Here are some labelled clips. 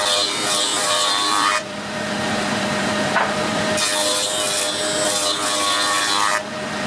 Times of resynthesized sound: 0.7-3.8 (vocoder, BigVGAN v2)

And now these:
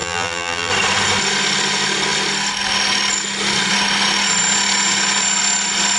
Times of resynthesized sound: 0.0-0.7 (vocoder, BigVGAN v2)

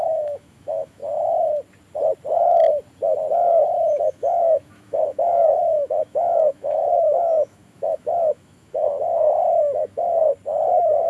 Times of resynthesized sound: 0.0-1.0 (autoencoder, DAC-VAE); 4.0-10.2; 10.7-11.1